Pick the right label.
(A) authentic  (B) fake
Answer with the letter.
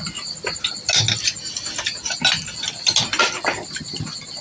A